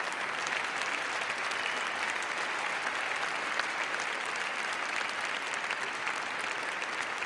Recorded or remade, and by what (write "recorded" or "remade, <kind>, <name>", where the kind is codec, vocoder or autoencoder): recorded